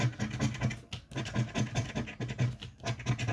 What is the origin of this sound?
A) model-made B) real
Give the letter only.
B